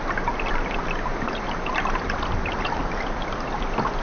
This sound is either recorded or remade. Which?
recorded